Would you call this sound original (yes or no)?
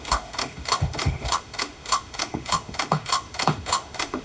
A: no